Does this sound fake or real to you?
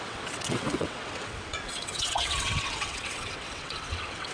fake